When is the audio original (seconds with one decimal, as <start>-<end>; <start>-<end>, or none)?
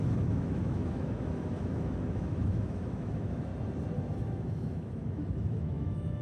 3.5-4.2